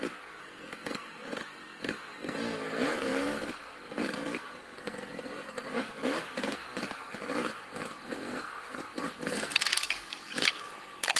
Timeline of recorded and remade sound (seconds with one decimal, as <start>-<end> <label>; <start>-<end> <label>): 0.0-11.2 remade